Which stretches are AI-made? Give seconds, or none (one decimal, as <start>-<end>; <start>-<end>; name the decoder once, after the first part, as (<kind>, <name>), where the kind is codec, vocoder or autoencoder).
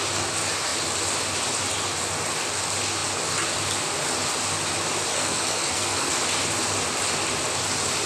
5.1-6.1 (codec, SNAC)